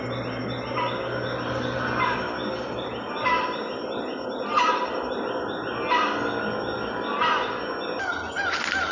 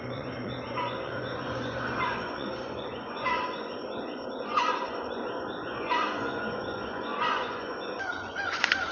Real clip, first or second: first